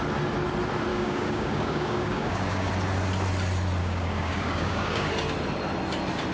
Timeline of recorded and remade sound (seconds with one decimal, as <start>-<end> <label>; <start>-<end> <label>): 0.0-0.9 recorded; 0.9-2.7 remade; 2.7-3.8 recorded; 3.8-5.1 remade; 5.1-6.3 recorded